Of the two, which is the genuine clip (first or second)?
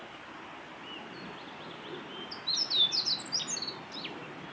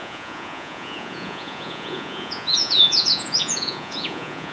first